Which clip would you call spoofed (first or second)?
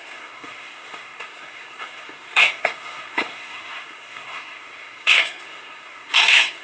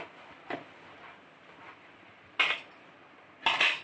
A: first